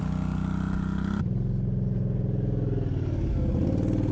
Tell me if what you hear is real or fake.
real